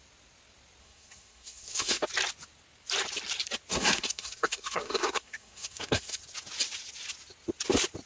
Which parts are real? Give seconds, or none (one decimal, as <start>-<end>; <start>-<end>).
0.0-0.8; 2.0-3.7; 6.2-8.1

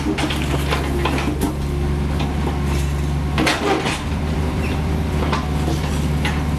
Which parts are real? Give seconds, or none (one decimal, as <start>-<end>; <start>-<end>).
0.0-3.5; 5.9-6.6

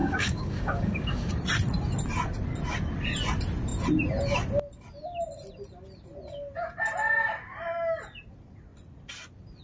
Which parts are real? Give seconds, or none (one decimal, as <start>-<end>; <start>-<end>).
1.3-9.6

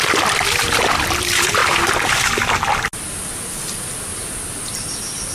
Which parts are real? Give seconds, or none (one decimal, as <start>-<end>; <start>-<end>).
1.6-4.8

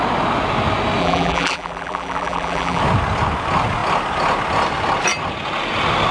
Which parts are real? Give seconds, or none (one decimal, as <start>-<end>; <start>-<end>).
0.0-1.0; 2.8-6.1

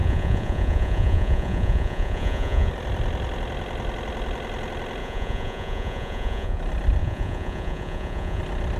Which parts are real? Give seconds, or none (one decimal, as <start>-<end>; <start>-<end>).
2.7-5.0; 6.6-7.0; 8.4-8.8

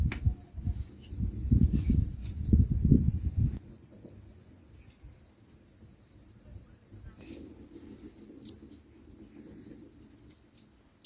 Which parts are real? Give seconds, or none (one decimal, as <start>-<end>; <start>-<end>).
0.0-2.2; 4.9-11.1

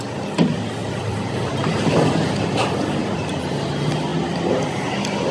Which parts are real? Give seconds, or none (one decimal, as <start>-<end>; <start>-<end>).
0.0-0.8; 1.5-3.0; 3.6-5.3